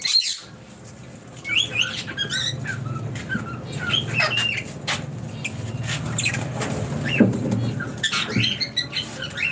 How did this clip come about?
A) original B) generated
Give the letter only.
A